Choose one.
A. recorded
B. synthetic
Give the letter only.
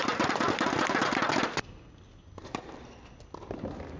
A